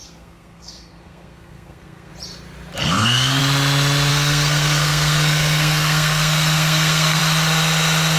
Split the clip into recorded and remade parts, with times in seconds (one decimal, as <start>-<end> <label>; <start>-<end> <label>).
0.0-2.1 remade; 2.1-2.8 recorded; 2.8-3.4 remade; 3.4-4.1 recorded; 4.1-7.2 remade; 7.2-8.2 recorded